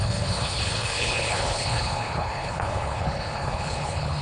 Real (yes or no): no